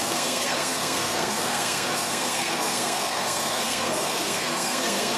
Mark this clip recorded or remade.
remade